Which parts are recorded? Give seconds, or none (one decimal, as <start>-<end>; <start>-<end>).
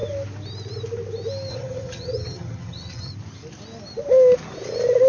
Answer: 0.0-1.5; 3.1-5.1